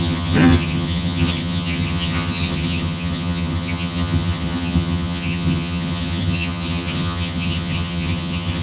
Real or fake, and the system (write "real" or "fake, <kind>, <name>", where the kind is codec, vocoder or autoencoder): fake, vocoder, HiFi-GAN